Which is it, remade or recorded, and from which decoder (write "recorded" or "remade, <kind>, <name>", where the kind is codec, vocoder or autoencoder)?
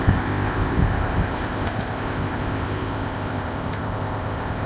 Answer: remade, codec, ZipCodec